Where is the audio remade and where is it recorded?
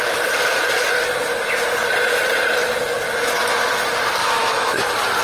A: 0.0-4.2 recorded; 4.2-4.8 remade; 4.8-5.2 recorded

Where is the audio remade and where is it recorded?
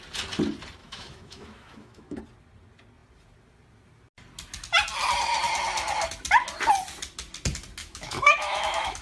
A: 0.0-0.8 recorded; 0.8-2.2 remade; 2.2-7.8 recorded; 7.8-9.0 remade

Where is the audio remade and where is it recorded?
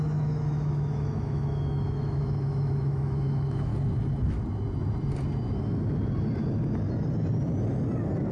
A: 0.0-3.7 remade; 3.7-8.3 recorded